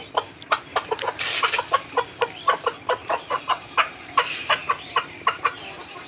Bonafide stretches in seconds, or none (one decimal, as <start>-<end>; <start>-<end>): 0.0-0.7; 1.2-3.0

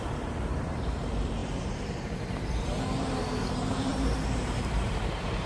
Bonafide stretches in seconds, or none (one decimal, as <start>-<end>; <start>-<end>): none